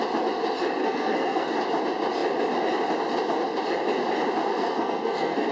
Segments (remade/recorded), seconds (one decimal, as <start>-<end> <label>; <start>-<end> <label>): 0.0-0.8 recorded; 0.8-1.5 remade; 1.5-4.5 recorded; 4.5-5.5 remade